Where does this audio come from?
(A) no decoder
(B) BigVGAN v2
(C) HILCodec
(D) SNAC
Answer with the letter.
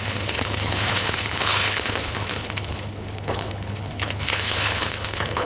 C